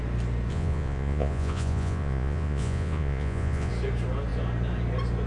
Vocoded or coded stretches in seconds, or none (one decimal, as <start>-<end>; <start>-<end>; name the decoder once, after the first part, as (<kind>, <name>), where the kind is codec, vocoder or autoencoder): 0.5-3.7 (vocoder, Vocos)